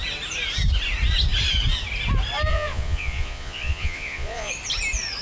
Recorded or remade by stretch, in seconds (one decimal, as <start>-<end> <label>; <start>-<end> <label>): 0.0-2.5 recorded; 2.5-4.5 remade; 4.5-5.2 recorded